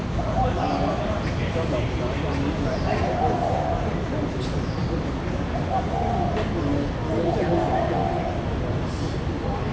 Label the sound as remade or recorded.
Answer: recorded